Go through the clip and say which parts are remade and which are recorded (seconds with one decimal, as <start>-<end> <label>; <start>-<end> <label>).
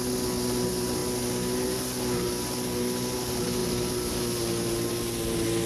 0.0-5.7 recorded